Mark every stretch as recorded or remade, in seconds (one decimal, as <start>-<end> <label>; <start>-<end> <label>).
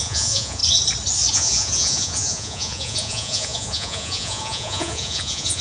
0.0-0.6 remade; 0.6-1.3 recorded; 1.3-5.6 remade